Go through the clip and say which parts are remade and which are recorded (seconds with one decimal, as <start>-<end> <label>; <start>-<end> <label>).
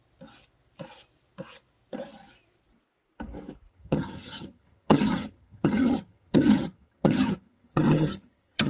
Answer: 0.0-3.7 recorded; 3.7-8.7 remade